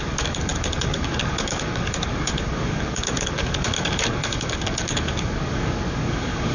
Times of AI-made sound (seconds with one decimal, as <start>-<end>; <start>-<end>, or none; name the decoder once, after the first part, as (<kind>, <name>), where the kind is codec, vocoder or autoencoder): 0.0-6.5 (codec, DAC)